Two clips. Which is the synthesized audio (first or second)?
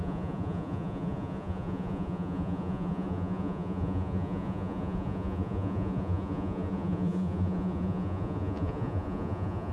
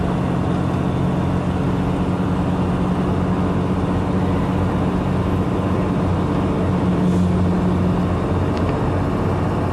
first